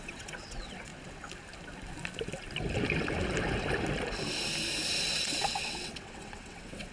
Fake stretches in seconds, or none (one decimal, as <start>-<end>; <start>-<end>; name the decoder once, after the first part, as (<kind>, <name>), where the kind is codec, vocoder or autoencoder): 0.0-0.9 (vocoder, WaveNeXt); 5.0-6.9